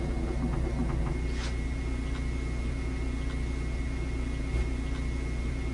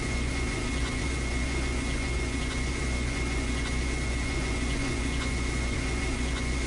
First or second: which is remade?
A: second